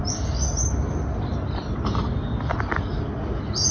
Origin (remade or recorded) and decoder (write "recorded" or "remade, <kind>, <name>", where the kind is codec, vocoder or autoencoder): recorded